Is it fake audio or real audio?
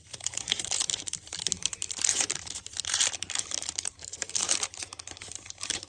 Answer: fake